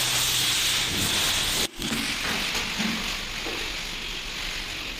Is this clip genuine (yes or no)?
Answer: yes